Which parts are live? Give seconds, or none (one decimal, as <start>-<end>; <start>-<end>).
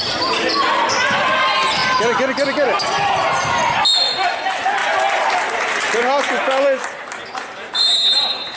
0.0-8.6